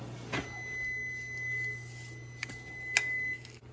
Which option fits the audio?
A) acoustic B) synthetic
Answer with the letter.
A